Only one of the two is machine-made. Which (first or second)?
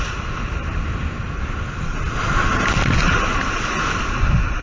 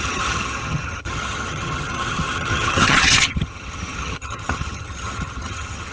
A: second